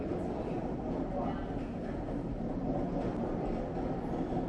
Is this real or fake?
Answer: real